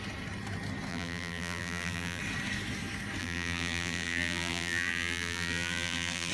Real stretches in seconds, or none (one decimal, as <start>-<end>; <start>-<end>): 0.0-0.9; 2.2-3.2